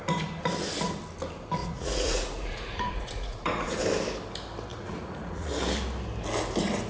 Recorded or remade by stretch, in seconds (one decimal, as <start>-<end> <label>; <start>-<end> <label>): 0.0-1.6 recorded; 1.6-3.8 remade; 3.8-4.7 recorded; 4.7-5.5 remade; 5.5-6.9 recorded